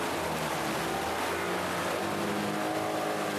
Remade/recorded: recorded